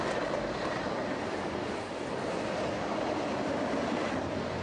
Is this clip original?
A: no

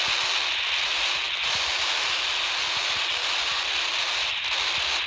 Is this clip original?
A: yes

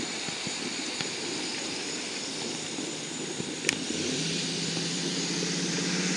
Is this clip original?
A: no